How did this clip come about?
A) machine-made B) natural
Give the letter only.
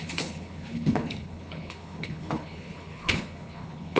A